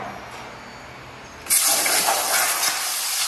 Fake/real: real